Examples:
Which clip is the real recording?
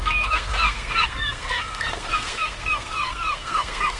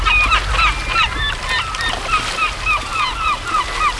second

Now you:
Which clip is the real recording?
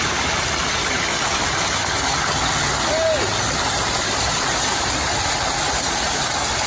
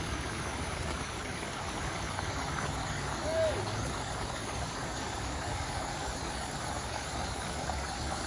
first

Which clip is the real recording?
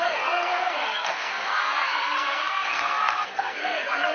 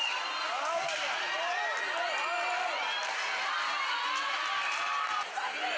second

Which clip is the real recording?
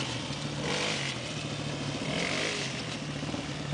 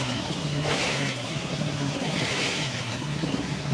first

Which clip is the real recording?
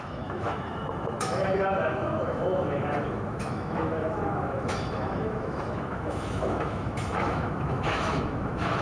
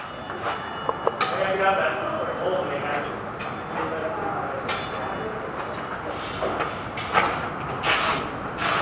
second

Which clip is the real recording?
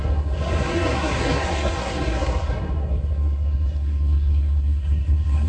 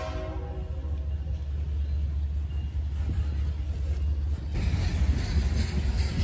second